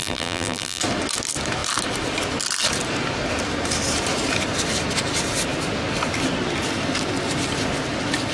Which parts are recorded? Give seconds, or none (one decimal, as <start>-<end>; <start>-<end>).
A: 0.8-8.3